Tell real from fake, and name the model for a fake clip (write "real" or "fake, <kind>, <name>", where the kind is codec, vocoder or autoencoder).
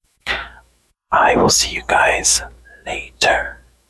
fake, autoencoder, DAC-VAE